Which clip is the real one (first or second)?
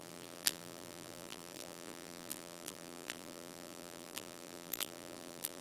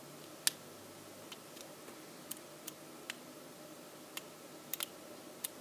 second